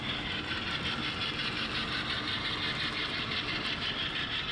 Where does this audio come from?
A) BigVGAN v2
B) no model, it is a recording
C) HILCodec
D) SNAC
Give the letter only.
B